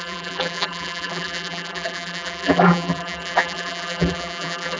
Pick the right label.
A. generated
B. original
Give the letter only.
A